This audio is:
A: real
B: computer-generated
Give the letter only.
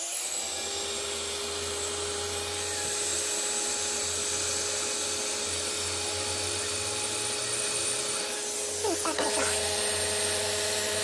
A